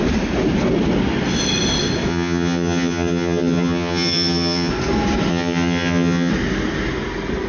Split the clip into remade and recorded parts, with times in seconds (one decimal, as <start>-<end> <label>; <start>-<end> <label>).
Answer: 0.0-2.1 recorded; 2.1-4.7 remade; 4.7-5.3 recorded; 5.3-6.3 remade; 6.3-7.5 recorded